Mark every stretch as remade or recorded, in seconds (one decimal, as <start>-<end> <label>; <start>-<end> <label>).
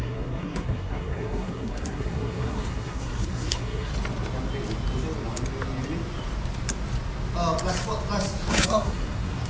0.0-3.9 remade; 3.9-8.5 recorded; 8.5-9.5 remade